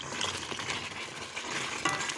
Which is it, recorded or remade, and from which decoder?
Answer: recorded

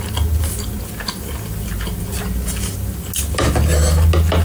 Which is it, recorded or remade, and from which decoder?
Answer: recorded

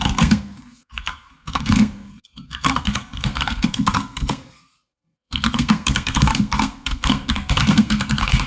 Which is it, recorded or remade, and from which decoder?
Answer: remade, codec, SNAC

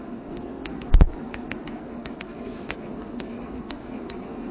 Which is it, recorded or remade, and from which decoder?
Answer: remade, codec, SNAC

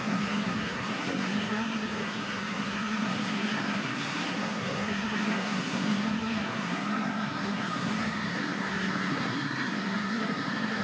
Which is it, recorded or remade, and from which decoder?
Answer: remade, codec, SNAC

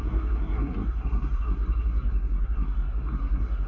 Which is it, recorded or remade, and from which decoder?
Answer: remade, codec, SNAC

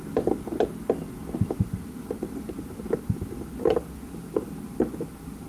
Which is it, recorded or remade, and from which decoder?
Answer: recorded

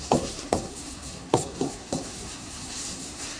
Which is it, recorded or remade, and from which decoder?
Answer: remade, codec, SNAC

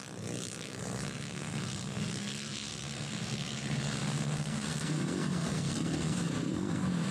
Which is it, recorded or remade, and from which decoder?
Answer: remade, codec, SNAC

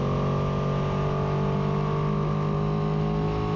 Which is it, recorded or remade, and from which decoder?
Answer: recorded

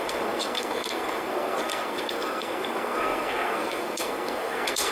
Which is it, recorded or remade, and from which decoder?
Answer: remade, codec, SNAC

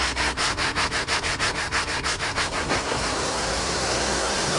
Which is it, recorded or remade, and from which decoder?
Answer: remade, codec, SNAC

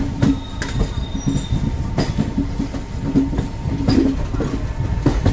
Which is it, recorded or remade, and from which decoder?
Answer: recorded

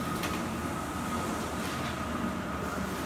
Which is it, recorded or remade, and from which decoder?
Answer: recorded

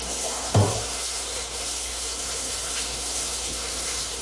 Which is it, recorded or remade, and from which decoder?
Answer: remade, codec, SNAC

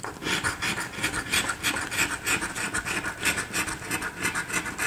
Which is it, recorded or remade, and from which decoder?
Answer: recorded